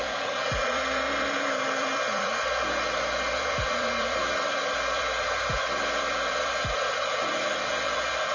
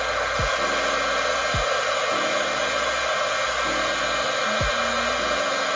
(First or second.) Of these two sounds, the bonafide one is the second